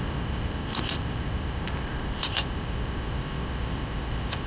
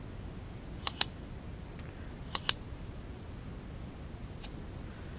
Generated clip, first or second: first